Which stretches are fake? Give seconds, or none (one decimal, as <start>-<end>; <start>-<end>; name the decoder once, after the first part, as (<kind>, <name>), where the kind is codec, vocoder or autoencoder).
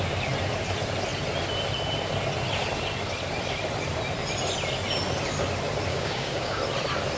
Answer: 5.9-6.6 (codec, DAC)